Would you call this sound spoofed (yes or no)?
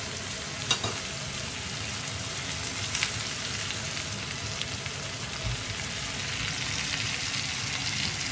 no